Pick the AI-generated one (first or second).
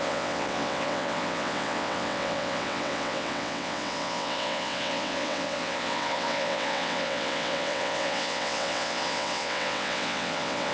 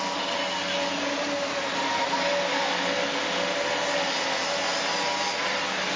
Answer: first